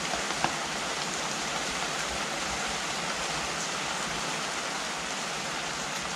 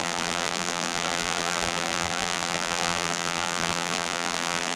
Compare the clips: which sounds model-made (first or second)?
second